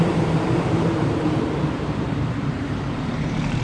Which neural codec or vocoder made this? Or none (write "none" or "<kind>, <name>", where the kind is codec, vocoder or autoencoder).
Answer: vocoder, BigVGAN v2